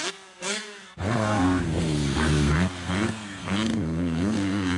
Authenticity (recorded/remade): remade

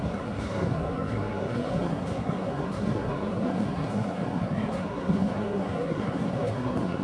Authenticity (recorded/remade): remade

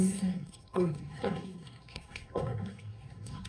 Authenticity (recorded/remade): remade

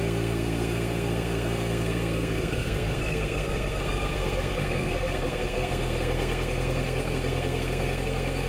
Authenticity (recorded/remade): remade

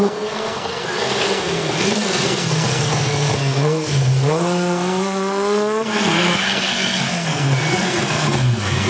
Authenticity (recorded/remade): remade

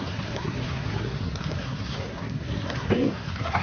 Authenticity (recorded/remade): remade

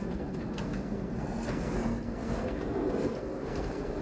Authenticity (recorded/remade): remade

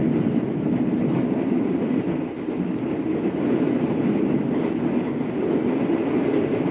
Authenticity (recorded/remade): recorded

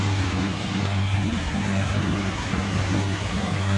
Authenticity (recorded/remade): remade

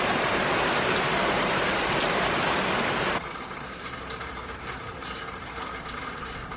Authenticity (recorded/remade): recorded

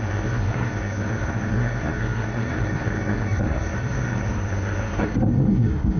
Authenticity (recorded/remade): remade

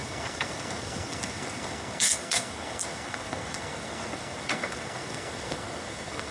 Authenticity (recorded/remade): remade